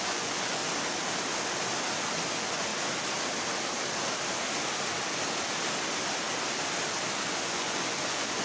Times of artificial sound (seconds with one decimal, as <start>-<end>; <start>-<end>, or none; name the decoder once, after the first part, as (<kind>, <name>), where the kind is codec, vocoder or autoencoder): 0.0-0.6 (vocoder, Vocos); 2.1-2.7; 7.1-8.4